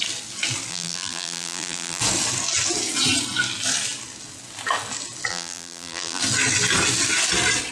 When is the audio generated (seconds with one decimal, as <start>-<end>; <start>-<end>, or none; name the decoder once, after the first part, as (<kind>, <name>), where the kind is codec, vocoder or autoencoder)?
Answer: 0.7-2.0 (vocoder, BigVGAN v2); 5.3-6.2